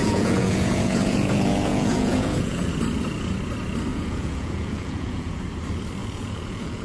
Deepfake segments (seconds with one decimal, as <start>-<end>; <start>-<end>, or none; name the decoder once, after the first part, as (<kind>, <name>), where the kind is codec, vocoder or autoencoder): 0.0-2.7 (vocoder, Vocos); 3.9-5.4; 6.0-6.8